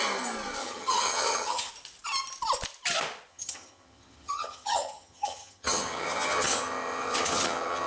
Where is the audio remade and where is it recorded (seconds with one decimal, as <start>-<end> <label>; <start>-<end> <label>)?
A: 0.0-0.6 recorded; 0.6-1.7 remade; 1.7-3.3 recorded; 3.3-7.9 remade